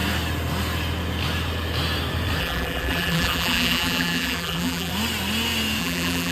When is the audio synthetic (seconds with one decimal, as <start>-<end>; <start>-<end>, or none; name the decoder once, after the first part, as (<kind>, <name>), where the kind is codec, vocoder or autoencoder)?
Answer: 2.4-4.9 (vocoder, BigVGAN v2); 5.8-6.3